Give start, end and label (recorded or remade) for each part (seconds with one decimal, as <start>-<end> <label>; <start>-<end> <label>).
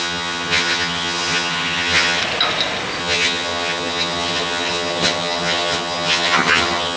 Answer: 0.0-2.2 remade; 2.2-3.0 recorded; 3.0-7.0 remade